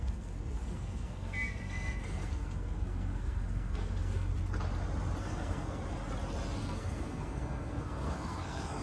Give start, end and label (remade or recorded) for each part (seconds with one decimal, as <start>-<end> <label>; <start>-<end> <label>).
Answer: 0.0-4.3 remade; 4.3-5.2 recorded; 5.2-5.8 remade; 5.8-6.6 recorded; 6.6-8.8 remade